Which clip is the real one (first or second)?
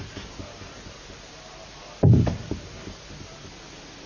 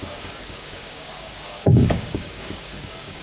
first